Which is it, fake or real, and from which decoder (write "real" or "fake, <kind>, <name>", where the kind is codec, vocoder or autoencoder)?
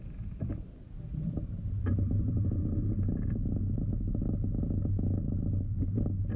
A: real